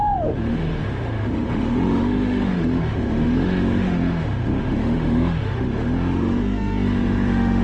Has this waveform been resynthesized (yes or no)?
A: yes